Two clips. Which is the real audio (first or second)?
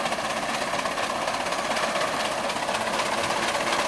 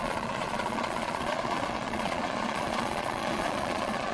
first